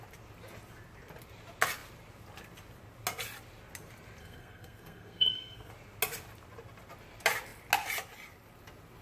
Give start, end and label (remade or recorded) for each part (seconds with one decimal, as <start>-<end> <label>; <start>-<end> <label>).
0.0-4.2 recorded; 4.2-5.7 remade; 5.7-9.0 recorded